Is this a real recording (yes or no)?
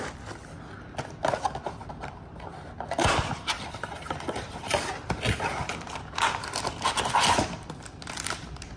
yes